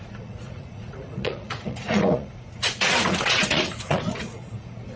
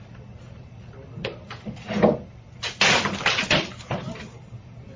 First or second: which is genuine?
second